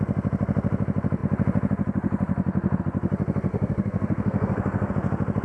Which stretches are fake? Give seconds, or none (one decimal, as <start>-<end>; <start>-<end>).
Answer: 3.5-4.9